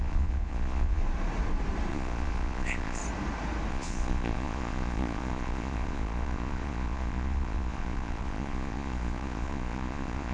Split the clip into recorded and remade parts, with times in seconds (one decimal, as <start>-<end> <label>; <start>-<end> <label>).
0.0-1.0 remade; 1.0-1.9 recorded; 1.9-3.0 remade; 3.0-3.7 recorded; 3.7-10.3 remade